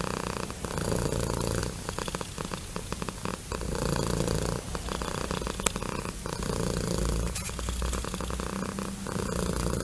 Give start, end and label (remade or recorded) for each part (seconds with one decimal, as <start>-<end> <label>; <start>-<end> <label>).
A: 0.0-9.8 recorded